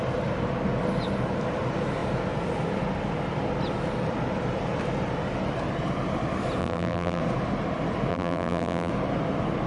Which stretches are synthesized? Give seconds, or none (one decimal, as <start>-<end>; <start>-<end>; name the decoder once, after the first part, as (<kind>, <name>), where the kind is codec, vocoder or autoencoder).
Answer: 6.6-7.2 (vocoder, BigVGAN v2); 8.1-8.9